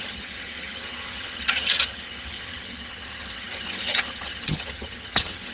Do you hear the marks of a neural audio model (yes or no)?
yes